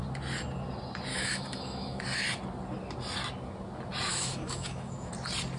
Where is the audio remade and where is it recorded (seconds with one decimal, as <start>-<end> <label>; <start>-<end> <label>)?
0.0-1.1 recorded; 1.1-2.0 remade; 2.0-4.1 recorded; 4.1-5.1 remade; 5.1-5.6 recorded